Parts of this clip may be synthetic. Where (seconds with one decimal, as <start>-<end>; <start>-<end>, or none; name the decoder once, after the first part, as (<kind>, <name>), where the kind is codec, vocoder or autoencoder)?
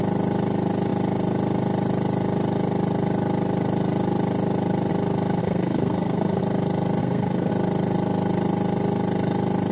5.4-6.4 (codec, SNAC); 7.0-7.5